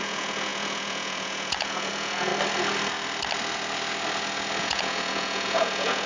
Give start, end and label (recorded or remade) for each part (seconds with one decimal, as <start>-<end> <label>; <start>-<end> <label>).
0.0-2.3 remade; 2.3-4.6 recorded; 4.6-6.1 remade